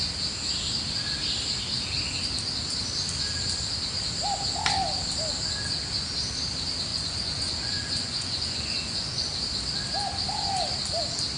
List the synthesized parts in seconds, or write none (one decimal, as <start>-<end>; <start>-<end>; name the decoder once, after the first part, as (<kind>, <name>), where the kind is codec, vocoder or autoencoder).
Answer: 6.9-9.3 (vocoder, Vocos)